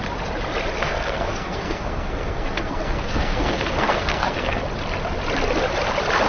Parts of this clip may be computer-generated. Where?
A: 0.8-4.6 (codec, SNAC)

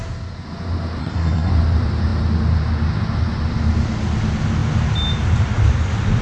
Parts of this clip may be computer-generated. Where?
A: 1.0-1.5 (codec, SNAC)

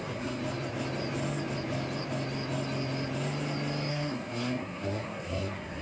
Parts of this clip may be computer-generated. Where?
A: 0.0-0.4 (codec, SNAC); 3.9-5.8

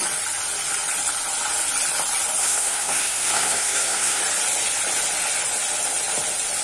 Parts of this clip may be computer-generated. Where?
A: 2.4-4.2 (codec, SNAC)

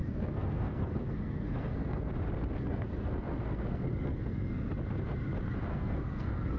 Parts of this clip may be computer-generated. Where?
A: 0.0-2.1 (codec, SNAC); 2.7-4.7; 5.7-6.6

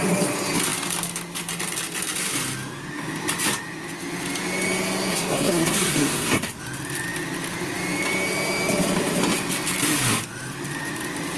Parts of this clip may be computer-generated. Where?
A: 5.1-6.6 (codec, SNAC)